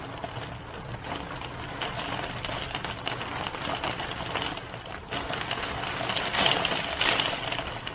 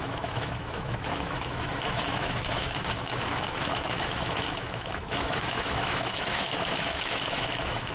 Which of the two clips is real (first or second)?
first